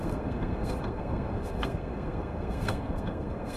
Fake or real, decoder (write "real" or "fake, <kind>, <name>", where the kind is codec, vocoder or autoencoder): fake, codec, SNAC